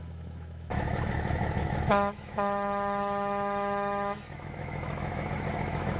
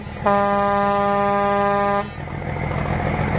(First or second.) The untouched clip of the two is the second